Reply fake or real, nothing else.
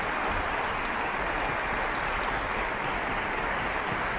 real